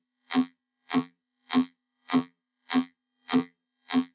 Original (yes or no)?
no